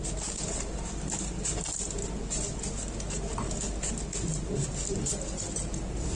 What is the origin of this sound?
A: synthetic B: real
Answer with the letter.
B